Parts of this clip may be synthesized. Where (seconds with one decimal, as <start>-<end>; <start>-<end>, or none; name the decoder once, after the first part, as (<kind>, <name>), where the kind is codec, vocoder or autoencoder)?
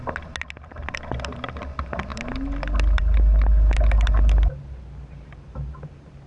none